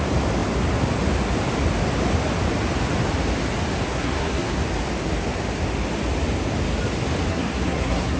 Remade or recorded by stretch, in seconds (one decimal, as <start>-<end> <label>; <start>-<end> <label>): 0.0-3.9 recorded; 3.9-4.6 remade; 4.6-7.3 recorded; 7.3-8.2 remade